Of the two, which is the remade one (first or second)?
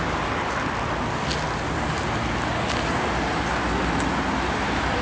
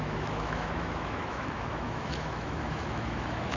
second